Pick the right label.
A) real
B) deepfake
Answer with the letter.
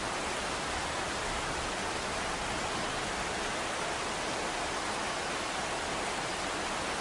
A